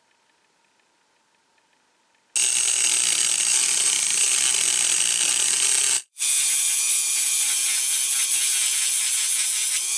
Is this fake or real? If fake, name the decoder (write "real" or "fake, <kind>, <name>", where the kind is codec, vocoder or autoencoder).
real